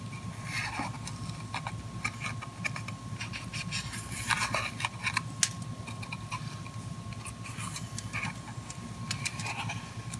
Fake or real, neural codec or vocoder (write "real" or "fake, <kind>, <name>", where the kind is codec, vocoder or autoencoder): real